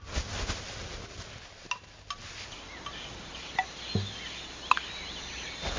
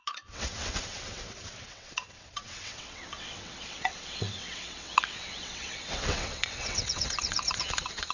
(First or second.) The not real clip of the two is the second